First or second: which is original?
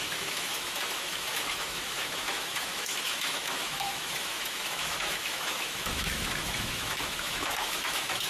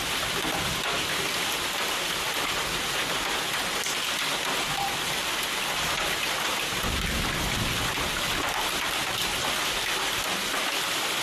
second